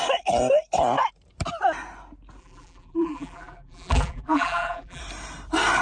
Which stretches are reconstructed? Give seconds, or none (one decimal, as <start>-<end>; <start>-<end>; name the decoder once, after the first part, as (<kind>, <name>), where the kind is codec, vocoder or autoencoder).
2.4-5.0 (vocoder, BigVGAN v2)